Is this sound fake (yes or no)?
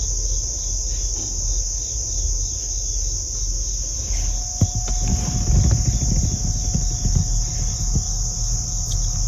no